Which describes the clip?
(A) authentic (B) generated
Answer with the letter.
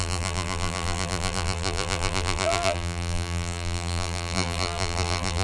B